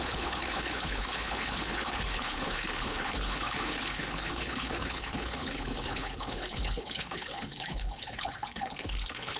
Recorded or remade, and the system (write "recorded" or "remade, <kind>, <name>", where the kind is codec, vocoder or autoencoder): remade, codec, HILCodec